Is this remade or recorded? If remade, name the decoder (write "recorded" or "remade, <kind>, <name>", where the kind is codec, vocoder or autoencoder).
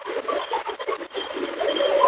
recorded